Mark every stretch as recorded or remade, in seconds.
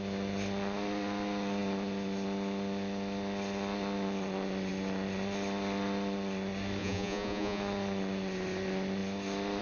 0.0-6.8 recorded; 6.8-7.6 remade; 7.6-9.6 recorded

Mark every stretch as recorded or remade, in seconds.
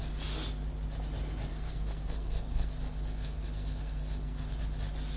0.0-1.5 recorded; 1.5-4.6 remade; 4.6-5.2 recorded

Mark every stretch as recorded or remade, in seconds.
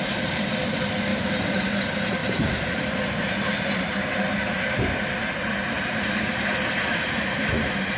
0.0-1.1 recorded; 1.1-1.7 remade; 1.7-2.2 recorded; 2.2-4.8 remade; 4.8-8.0 recorded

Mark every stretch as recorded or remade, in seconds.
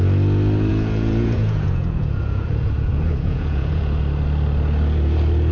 0.0-0.7 recorded; 0.7-4.0 remade; 4.0-5.5 recorded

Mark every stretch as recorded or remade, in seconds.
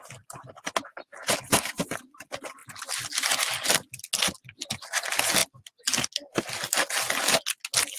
0.0-8.0 recorded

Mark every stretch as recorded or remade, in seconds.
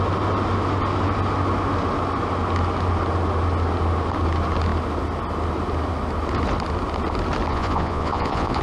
0.0-7.5 recorded; 7.5-8.6 remade